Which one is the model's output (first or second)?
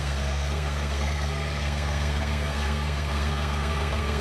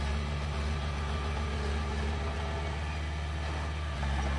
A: first